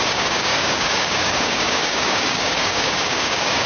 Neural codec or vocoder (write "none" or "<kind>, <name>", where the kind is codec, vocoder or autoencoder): codec, DAC